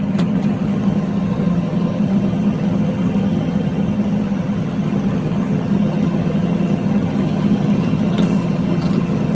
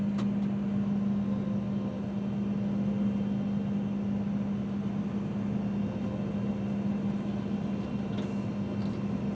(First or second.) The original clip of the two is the second